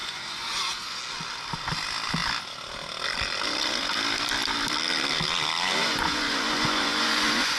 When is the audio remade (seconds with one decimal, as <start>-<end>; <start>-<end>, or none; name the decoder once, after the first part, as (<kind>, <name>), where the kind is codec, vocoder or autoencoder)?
0.0-1.0 (vocoder, Vocos); 5.8-7.6